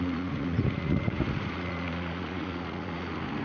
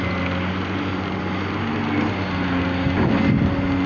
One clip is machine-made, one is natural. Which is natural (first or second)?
second